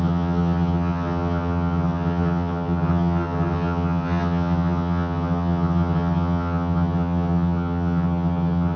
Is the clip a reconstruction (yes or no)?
yes